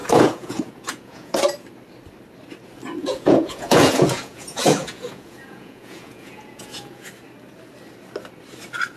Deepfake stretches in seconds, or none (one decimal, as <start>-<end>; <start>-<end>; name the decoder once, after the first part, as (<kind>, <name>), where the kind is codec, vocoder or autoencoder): 0.0-1.3 (vocoder, Vocos); 3.0-7.1